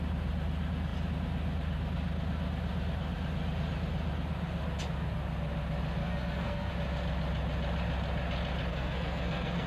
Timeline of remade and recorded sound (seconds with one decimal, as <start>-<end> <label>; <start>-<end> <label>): 0.0-6.0 recorded; 6.0-6.7 remade; 6.7-8.7 recorded; 8.7-9.7 remade